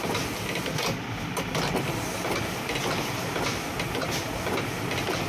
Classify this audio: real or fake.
real